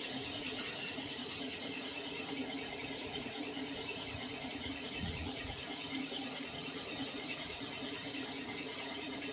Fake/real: fake